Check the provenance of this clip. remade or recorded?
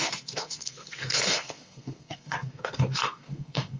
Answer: remade